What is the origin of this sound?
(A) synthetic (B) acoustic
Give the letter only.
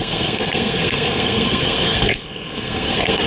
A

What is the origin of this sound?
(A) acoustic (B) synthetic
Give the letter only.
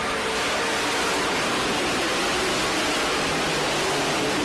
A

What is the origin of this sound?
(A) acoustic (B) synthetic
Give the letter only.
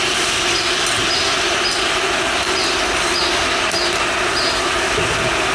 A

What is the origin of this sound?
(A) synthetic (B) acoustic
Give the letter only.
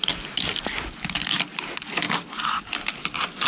B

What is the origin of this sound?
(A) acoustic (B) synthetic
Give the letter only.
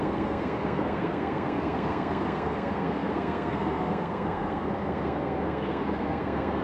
B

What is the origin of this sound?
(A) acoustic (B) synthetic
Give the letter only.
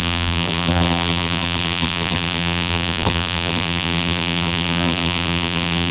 B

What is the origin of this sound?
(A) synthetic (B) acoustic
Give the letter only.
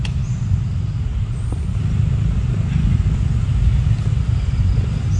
B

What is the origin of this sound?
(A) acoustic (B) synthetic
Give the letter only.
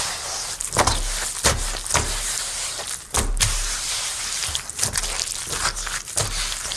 A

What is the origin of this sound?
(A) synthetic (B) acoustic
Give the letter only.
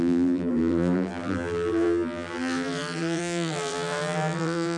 A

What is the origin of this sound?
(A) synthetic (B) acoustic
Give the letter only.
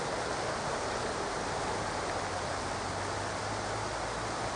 B